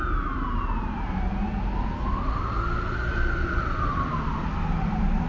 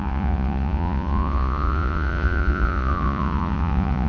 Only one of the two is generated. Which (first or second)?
second